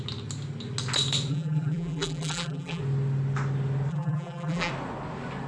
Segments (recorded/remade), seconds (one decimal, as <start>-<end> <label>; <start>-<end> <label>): 0.0-1.3 recorded; 1.3-2.8 remade; 2.8-3.9 recorded; 3.9-4.7 remade; 4.7-5.5 recorded